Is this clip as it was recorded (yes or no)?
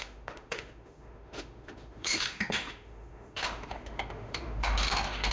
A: no